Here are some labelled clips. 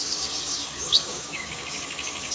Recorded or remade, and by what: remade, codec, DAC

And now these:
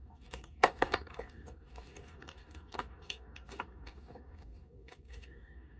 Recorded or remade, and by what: remade, codec, DAC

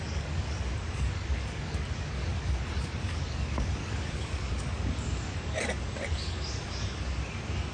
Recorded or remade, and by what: remade, codec, DAC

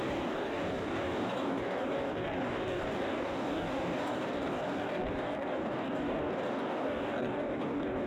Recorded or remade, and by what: remade, codec, DAC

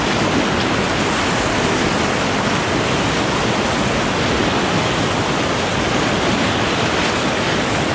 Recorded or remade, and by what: recorded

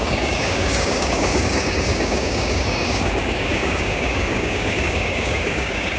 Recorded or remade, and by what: remade, codec, DAC